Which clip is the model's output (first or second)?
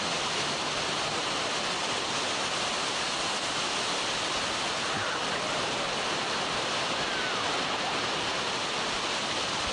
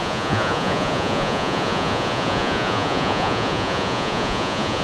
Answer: second